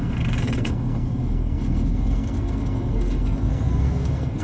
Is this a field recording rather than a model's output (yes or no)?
no